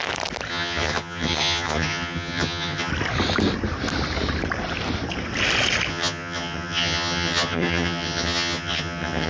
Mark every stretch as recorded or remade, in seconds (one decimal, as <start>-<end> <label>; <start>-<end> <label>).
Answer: 0.0-0.5 recorded; 0.5-2.9 remade; 2.9-5.9 recorded; 5.9-9.3 remade